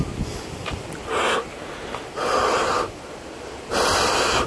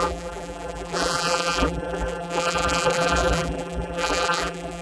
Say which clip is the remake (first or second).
second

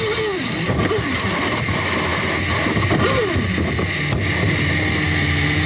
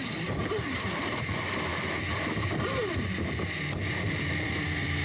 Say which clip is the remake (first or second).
second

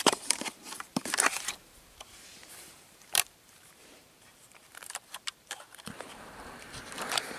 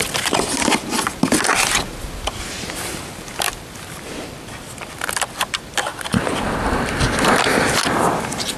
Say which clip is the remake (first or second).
first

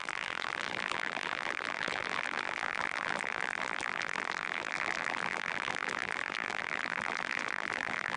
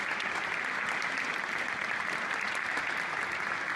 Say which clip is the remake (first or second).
first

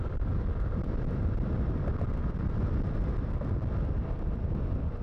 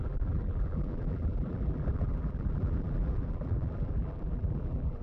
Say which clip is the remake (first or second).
second